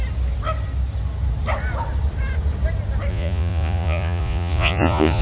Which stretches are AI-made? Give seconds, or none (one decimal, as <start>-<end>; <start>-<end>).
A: 3.1-5.2